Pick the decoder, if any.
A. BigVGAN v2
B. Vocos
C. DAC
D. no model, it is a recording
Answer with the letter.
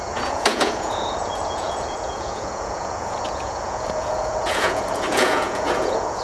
B